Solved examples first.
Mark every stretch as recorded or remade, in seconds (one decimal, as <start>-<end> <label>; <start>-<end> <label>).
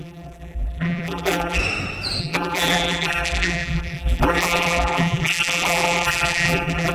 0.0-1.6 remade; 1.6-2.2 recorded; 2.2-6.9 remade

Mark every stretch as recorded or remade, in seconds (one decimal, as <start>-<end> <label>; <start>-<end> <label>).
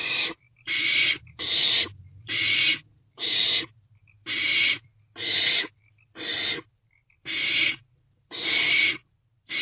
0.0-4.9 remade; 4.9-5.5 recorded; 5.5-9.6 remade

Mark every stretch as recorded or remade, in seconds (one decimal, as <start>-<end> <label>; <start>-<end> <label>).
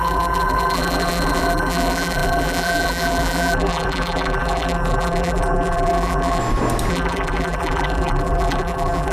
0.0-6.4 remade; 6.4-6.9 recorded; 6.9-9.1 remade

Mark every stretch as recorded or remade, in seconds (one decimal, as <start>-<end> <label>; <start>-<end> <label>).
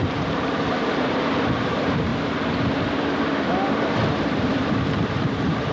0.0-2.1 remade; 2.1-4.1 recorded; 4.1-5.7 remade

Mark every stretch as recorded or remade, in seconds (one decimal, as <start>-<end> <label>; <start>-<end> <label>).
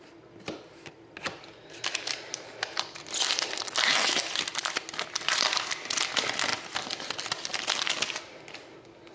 0.0-6.5 recorded; 6.5-7.1 remade; 7.1-9.1 recorded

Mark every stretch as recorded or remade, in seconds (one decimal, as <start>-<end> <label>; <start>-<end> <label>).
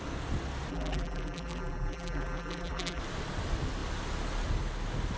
0.0-0.7 recorded; 0.7-3.0 remade; 3.0-5.2 recorded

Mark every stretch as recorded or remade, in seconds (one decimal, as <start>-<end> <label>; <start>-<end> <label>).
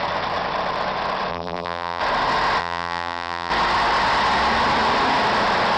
0.0-1.3 recorded; 1.3-2.0 remade; 2.0-2.6 recorded; 2.6-3.5 remade; 3.5-5.8 recorded